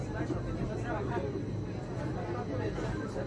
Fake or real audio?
real